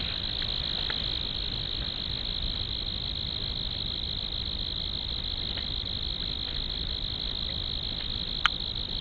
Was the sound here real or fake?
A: real